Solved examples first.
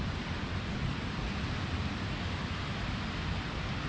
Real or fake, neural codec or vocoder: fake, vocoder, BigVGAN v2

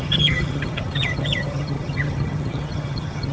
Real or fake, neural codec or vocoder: fake, vocoder, HiFi-GAN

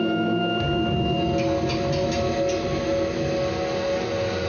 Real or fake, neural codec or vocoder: real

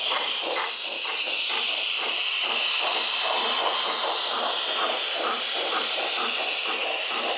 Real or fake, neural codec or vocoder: real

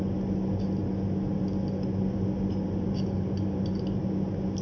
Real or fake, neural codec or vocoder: real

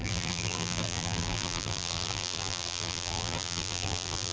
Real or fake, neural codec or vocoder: fake, vocoder, BigVGAN v2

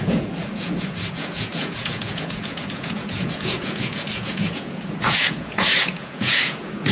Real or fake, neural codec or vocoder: fake, vocoder, Vocos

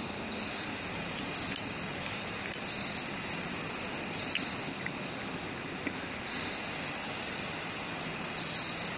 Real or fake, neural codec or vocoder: real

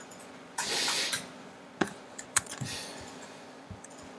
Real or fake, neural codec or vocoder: fake, vocoder, Vocos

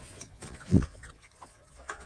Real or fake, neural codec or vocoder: fake, vocoder, Vocos